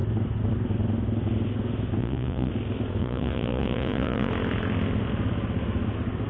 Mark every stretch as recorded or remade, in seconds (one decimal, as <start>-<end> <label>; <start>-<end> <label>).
0.0-2.0 recorded; 2.0-2.5 remade; 2.5-3.0 recorded; 3.0-4.3 remade; 4.3-6.3 recorded